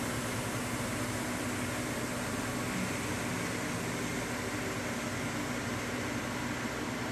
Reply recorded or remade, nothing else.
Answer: recorded